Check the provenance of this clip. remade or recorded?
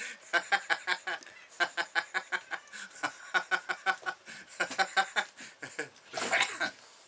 recorded